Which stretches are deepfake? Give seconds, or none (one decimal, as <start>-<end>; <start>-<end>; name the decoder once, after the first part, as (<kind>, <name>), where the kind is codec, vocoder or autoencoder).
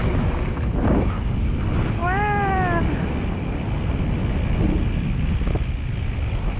none